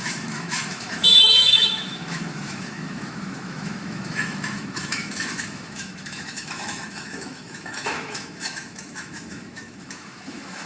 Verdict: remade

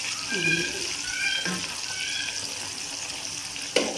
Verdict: recorded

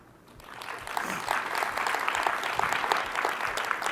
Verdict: recorded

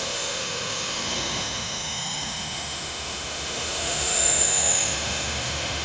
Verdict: remade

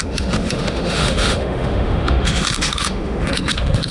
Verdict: remade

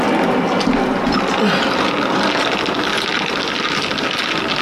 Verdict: recorded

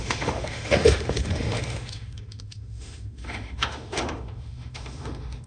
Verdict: remade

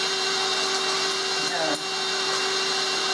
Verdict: recorded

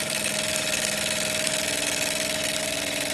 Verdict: recorded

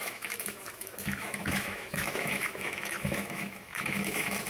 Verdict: remade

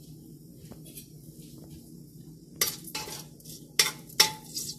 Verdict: recorded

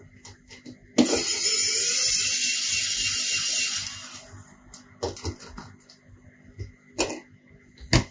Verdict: recorded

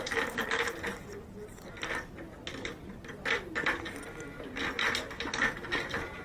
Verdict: recorded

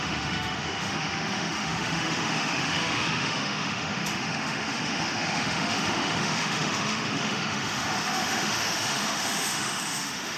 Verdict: remade